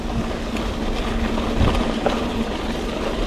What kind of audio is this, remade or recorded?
recorded